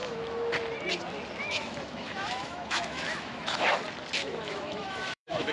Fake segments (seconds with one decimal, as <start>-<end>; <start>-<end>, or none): 0.0-0.5; 1.4-3.8; 4.2-5.5

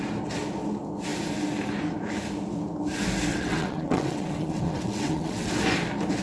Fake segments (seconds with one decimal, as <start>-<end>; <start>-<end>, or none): 3.3-5.5

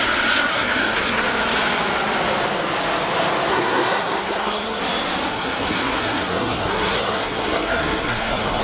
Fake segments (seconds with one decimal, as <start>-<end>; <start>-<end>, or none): 0.5-1.2; 3.5-4.8; 5.3-8.6

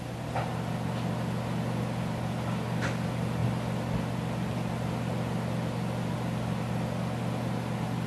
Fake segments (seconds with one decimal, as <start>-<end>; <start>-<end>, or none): 0.0-3.4; 7.3-8.1

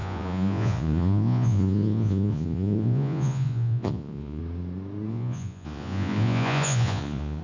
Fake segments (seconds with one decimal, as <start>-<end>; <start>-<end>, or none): 0.0-4.4; 5.1-7.4

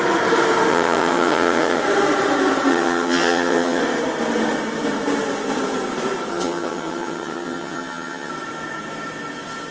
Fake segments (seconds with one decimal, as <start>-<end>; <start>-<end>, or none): 0.7-1.8; 2.7-3.8; 6.3-8.3

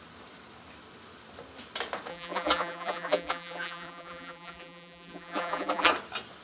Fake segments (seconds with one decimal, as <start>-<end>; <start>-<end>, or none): 2.1-5.9